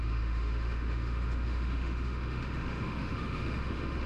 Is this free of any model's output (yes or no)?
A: no